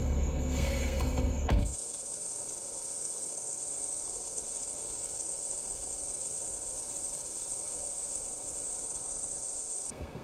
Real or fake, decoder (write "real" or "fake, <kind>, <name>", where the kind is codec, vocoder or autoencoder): fake, codec, SNAC